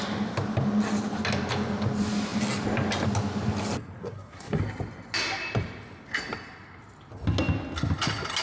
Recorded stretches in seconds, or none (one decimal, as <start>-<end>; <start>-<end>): 0.0-4.0; 4.6-8.4